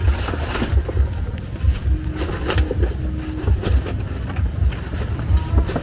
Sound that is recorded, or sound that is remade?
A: recorded